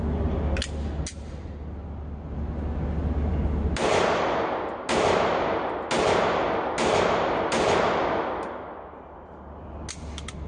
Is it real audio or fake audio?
real